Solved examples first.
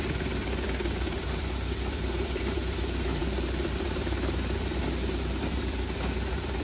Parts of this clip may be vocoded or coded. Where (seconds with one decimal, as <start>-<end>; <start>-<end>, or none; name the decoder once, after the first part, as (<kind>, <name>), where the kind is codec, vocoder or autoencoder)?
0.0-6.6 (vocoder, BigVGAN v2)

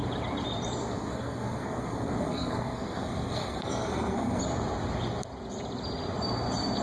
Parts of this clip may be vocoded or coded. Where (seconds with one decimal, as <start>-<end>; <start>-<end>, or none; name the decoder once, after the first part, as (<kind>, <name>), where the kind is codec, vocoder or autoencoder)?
0.8-4.4 (codec, SNAC)

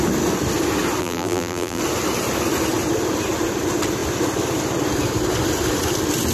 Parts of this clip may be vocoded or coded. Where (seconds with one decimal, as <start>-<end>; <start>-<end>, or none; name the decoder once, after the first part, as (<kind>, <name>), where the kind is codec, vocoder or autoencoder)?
1.0-1.8 (vocoder, BigVGAN v2)